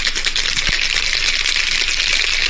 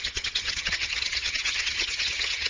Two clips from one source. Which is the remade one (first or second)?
second